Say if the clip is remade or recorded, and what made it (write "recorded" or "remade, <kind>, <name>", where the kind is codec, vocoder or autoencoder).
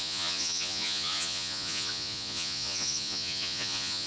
remade, vocoder, Vocos